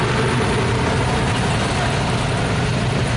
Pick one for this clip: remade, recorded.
recorded